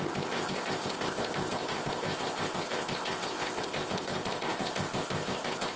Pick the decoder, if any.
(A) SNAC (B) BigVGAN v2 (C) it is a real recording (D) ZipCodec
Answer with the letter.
D